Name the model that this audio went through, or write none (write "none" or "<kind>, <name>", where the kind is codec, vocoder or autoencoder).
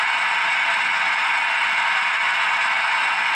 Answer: none